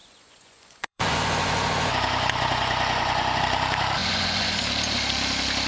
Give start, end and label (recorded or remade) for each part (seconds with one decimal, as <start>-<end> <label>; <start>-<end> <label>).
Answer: 0.0-3.4 remade; 3.4-4.0 recorded; 4.0-4.6 remade; 4.6-5.7 recorded